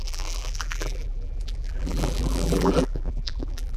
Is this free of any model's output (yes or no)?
no